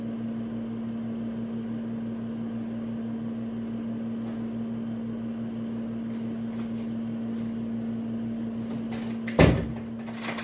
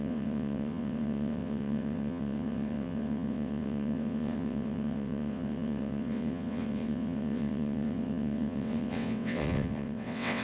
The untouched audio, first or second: first